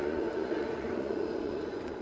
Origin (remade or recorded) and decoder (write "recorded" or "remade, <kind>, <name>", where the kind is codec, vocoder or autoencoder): remade, vocoder, Vocos